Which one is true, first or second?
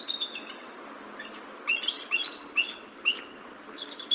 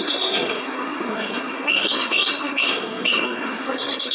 first